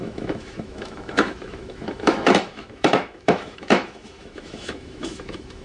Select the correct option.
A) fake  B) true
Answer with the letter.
A